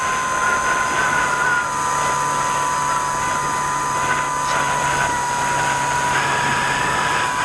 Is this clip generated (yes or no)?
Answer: no